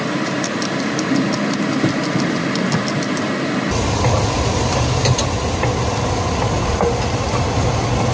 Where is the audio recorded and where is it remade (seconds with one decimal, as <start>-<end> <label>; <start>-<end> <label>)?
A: 0.0-8.1 recorded

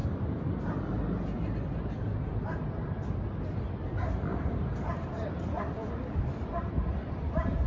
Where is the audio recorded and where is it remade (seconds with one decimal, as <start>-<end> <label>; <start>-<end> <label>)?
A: 0.0-0.6 remade; 0.6-4.3 recorded; 4.3-7.7 remade

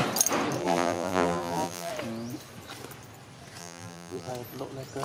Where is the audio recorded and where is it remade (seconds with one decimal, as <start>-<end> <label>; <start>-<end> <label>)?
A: 0.0-0.6 recorded; 0.6-1.9 remade; 1.9-3.6 recorded; 3.6-4.3 remade; 4.3-5.0 recorded

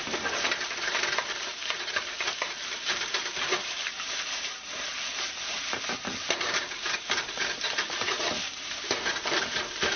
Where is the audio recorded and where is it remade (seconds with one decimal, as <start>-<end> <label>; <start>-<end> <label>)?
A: 0.0-10.0 remade

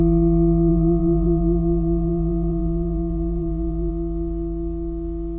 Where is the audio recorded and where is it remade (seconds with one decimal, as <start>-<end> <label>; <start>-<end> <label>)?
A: 0.0-0.7 recorded; 0.7-3.9 remade; 3.9-5.4 recorded

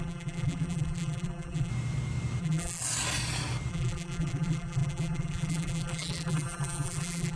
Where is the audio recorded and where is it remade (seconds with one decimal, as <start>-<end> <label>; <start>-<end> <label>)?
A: 0.0-1.7 remade; 1.7-2.4 recorded; 2.4-2.8 remade; 2.8-3.7 recorded; 3.7-7.4 remade